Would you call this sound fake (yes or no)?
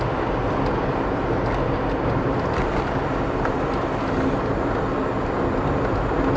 no